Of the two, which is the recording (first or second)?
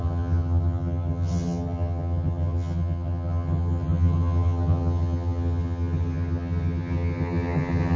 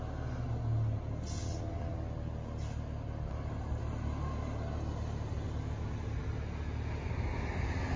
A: second